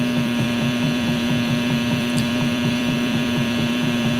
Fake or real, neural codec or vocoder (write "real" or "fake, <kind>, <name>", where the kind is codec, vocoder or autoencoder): fake, vocoder, BigVGAN v2